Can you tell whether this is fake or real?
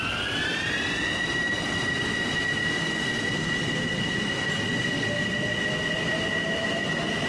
real